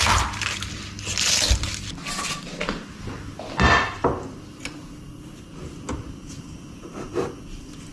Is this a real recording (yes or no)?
yes